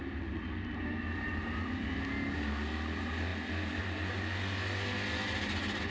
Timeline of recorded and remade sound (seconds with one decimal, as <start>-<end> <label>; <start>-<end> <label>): 0.0-5.9 recorded